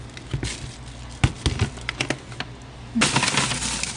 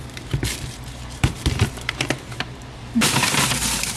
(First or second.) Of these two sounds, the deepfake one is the second